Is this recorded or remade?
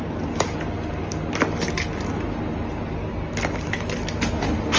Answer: recorded